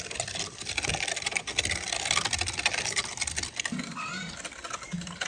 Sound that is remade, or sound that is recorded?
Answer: recorded